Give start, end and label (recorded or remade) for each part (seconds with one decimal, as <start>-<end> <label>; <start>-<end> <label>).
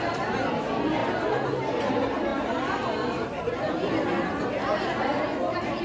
0.0-2.3 recorded; 2.3-3.4 remade; 3.4-5.1 recorded; 5.1-5.8 remade